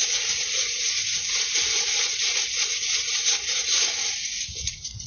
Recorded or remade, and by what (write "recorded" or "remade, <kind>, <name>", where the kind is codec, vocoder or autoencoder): remade, vocoder, Vocos